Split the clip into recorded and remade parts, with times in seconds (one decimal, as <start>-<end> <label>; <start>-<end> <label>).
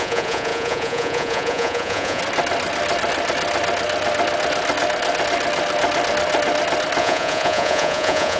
0.0-2.2 remade; 2.2-7.0 recorded; 7.0-8.4 remade